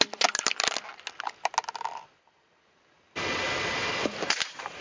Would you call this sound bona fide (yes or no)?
yes